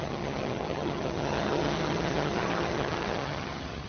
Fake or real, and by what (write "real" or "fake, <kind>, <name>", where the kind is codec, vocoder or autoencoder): fake, vocoder, HiFi-GAN